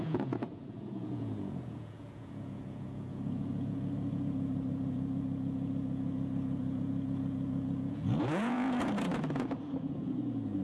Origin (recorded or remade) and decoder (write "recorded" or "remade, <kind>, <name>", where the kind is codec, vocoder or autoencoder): remade, vocoder, Vocos